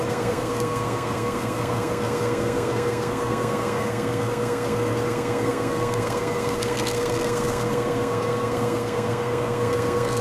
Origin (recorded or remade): remade